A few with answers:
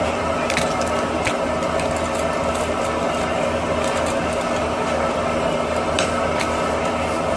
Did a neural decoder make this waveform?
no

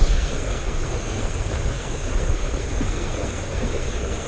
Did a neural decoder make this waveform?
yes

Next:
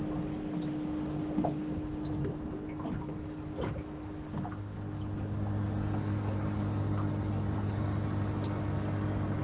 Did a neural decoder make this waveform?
no